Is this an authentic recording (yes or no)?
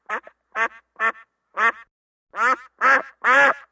yes